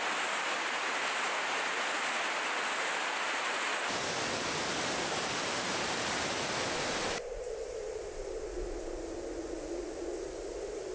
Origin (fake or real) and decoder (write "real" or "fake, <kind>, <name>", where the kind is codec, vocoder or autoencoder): real